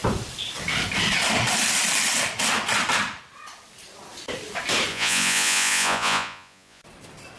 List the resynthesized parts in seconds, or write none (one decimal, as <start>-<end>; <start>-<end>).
4.9-6.8